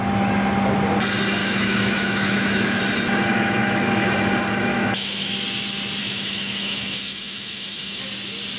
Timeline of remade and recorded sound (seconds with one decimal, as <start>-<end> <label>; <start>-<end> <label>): 0.0-1.4 recorded; 1.4-2.8 remade; 2.8-3.3 recorded; 3.3-4.1 remade; 4.1-4.7 recorded; 4.7-5.3 remade; 5.3-6.0 recorded; 6.0-8.0 remade; 8.0-8.6 recorded